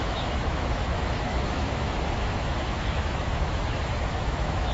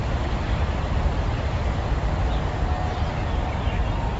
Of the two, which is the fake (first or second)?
first